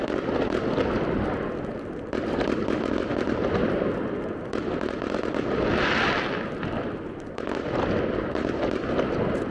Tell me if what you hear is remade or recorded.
recorded